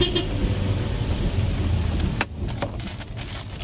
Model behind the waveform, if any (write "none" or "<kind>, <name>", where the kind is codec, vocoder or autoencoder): none